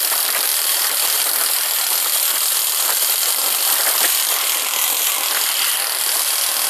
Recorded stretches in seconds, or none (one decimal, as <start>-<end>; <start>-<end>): 0.0-0.5; 1.1-3.4; 5.7-6.7